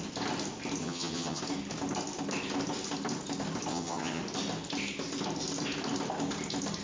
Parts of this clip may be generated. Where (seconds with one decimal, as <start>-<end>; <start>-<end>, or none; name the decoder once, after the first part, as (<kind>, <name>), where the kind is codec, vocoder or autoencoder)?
0.8-1.4 (vocoder, HiFi-GAN); 3.7-4.2